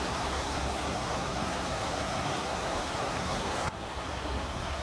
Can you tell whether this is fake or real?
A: fake